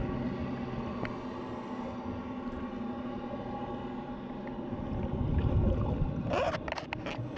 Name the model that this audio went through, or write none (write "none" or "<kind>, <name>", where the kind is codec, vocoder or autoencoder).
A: none